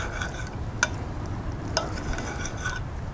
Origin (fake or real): real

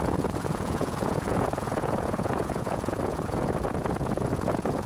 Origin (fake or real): fake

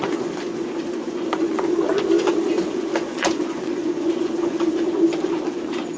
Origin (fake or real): fake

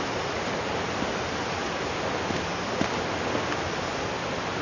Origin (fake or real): real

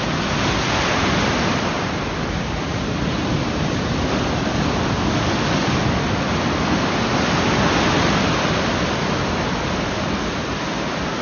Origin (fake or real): real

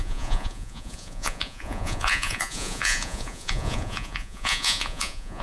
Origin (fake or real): fake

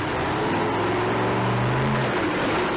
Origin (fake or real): real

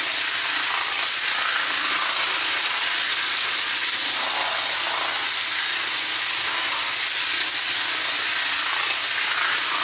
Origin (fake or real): real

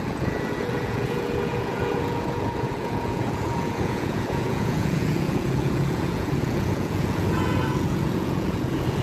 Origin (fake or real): fake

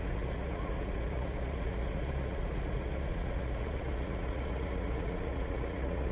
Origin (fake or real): fake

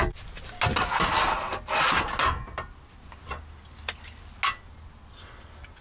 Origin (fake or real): real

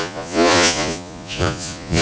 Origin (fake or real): fake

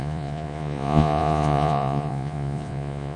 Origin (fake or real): fake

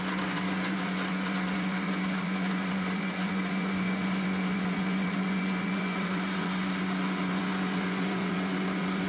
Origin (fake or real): fake